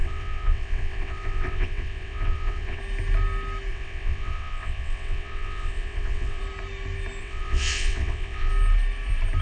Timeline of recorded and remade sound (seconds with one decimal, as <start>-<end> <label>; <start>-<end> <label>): 0.0-2.8 remade; 2.8-3.7 recorded; 3.7-6.4 remade; 6.4-7.2 recorded; 7.2-8.5 remade; 8.5-9.4 recorded